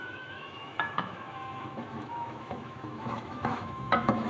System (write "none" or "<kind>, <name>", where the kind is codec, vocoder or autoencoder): autoencoder, DAC-VAE